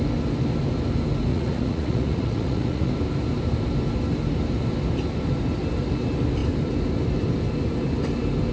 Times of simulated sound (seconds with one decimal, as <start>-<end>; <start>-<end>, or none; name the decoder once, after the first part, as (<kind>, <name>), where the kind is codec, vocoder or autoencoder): 1.3-2.9 (vocoder, Vocos)